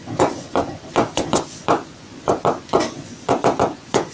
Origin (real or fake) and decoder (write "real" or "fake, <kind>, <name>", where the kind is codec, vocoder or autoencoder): fake, vocoder, Vocos